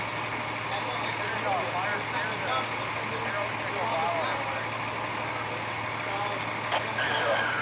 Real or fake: real